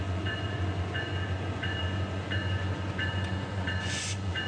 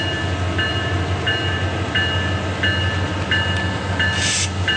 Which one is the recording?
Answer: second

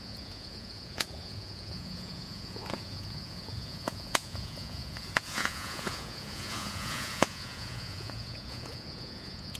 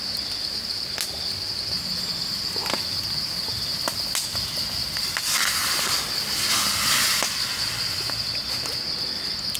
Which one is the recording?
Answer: second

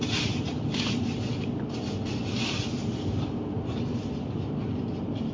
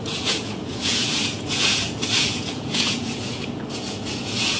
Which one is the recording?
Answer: first